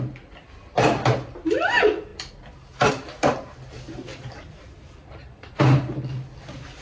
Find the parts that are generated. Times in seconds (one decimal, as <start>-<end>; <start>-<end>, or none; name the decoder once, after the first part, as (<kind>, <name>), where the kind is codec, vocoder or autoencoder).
4.1-5.8 (vocoder, BigVGAN v2)